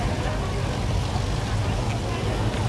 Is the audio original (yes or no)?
yes